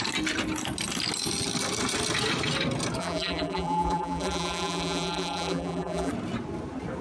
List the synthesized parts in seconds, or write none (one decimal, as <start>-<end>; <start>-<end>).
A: 3.0-6.1